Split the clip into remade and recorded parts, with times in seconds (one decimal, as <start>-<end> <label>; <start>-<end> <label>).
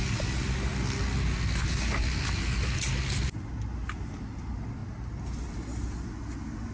0.0-6.7 recorded